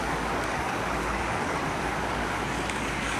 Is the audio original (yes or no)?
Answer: no